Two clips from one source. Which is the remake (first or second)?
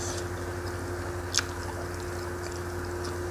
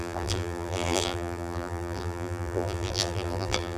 second